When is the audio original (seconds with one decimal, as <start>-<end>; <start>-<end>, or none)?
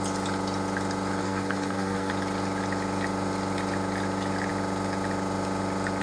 0.0-1.2; 2.1-6.0